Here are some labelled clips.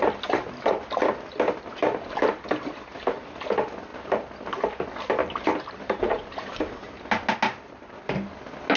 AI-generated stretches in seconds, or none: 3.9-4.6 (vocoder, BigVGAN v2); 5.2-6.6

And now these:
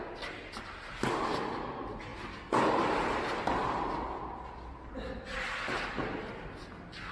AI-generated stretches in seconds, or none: none

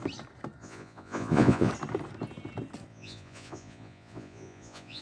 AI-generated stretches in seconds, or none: 0.6-1.7 (vocoder, Vocos); 2.9-5.0

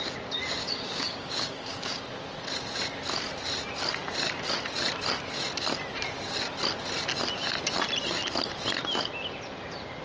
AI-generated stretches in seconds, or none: 0.6-2.0 (codec, DAC)

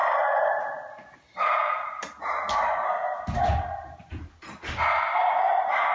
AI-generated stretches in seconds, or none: none